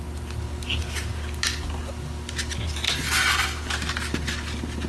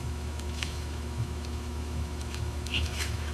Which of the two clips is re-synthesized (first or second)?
second